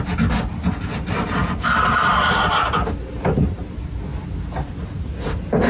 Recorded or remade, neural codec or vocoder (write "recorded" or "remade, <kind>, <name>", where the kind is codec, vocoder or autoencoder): recorded